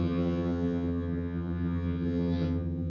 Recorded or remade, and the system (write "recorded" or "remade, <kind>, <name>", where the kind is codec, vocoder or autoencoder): remade, vocoder, HiFi-GAN